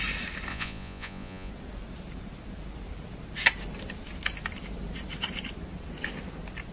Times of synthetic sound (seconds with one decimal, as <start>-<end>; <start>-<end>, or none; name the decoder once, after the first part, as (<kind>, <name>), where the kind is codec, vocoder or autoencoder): 0.5-1.5 (vocoder, Vocos)